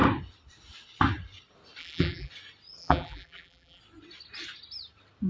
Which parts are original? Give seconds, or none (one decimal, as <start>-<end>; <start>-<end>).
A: 0.0-1.8; 2.3-2.8; 3.8-5.3